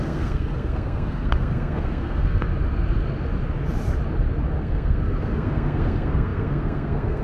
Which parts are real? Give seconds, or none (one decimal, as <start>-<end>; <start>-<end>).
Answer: 2.5-4.6

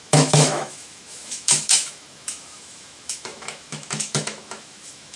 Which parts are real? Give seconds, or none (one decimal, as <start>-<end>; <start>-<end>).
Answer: none

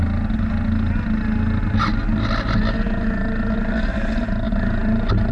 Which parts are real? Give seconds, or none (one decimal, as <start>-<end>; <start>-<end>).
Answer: 0.0-5.3